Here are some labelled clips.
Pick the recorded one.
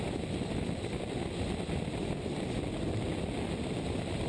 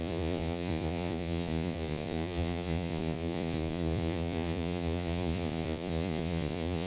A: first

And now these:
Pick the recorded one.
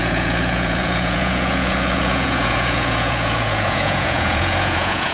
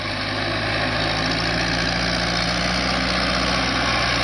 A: second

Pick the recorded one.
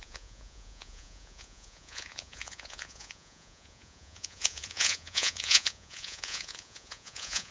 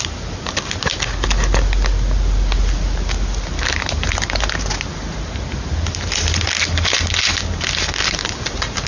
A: second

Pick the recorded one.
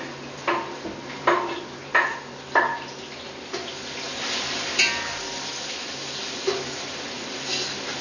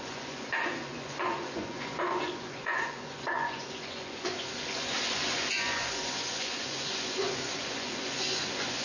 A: first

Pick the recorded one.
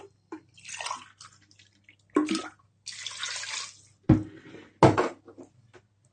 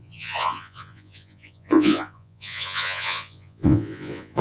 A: first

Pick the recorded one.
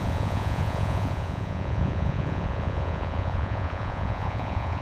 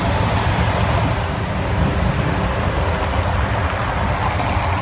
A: second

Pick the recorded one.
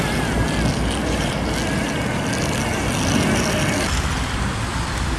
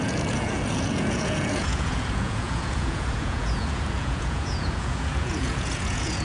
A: first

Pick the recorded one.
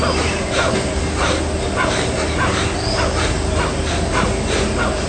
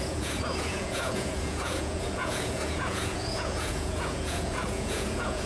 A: first